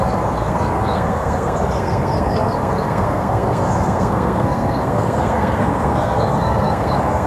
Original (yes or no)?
no